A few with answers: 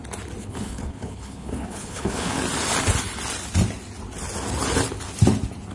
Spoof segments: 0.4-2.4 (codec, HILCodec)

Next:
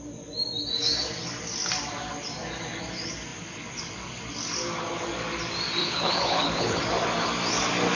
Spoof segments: 5.8-6.8 (codec, HILCodec)

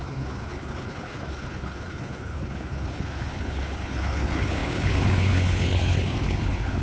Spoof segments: 0.0-6.8 (codec, HILCodec)

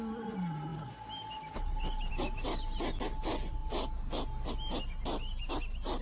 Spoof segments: none

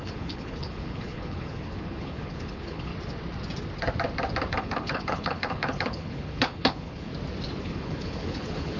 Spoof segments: 0.0-2.9 (codec, HILCodec); 4.5-7.1; 7.6-8.8

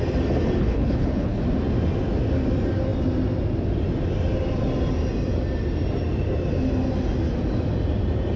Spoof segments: 0.6-1.4 (codec, HILCodec)